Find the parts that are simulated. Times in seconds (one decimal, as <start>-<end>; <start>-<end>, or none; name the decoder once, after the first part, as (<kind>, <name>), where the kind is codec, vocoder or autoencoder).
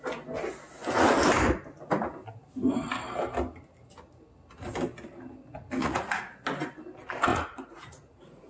5.8-6.3 (vocoder, Vocos); 7.3-8.5